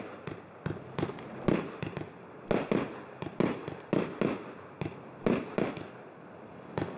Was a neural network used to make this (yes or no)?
no